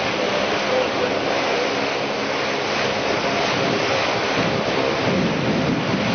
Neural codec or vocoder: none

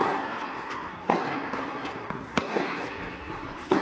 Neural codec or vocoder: codec, SNAC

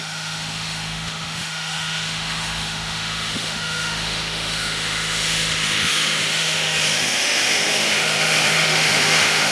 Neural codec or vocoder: autoencoder, DAC-VAE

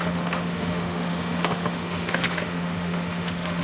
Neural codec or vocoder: autoencoder, DAC-VAE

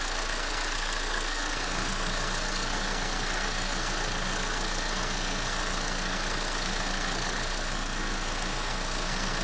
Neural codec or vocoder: codec, SNAC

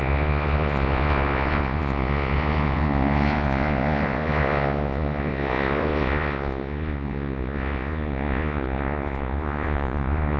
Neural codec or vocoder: vocoder, Vocos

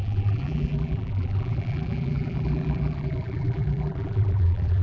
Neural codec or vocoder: vocoder, BigVGAN v2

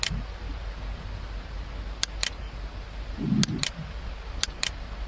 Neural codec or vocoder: none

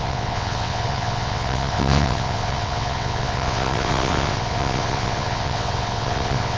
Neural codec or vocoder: vocoder, WaveNeXt